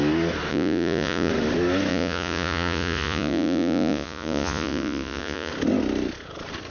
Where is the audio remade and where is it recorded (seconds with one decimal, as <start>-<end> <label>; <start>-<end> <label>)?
0.0-0.5 recorded; 0.5-1.3 remade; 1.3-1.9 recorded; 1.9-5.5 remade; 5.5-6.7 recorded